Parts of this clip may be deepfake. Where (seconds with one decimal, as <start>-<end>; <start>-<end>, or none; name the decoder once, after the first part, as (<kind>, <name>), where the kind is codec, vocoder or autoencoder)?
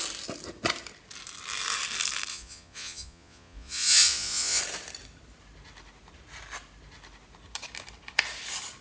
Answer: 2.3-4.6 (vocoder, Vocos)